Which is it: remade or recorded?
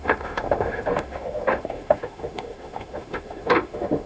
remade